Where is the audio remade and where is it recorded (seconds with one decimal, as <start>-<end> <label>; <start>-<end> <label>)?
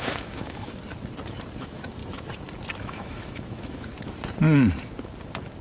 0.0-0.8 remade; 0.8-1.6 recorded; 1.6-2.0 remade; 2.0-2.8 recorded; 2.8-3.9 remade; 3.9-5.6 recorded